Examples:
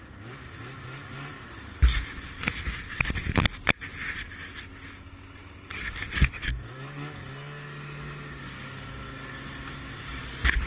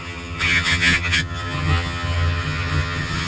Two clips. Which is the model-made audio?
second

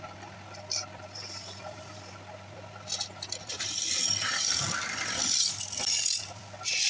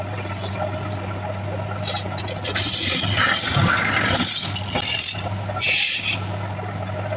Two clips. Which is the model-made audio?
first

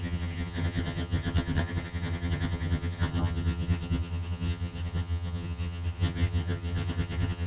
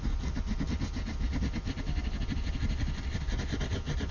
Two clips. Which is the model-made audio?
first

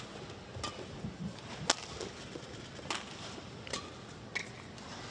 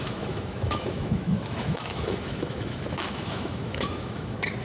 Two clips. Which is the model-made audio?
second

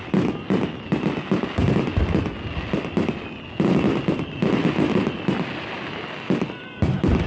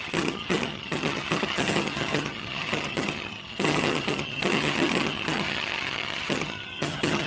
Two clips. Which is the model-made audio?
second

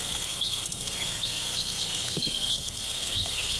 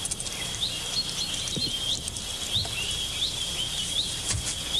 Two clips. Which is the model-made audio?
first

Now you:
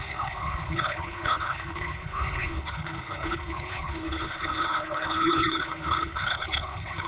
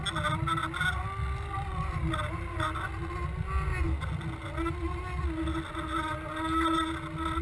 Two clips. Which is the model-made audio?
first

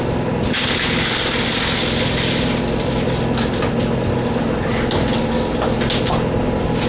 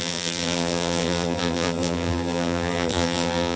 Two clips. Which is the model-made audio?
second